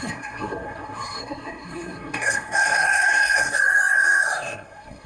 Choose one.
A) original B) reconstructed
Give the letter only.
B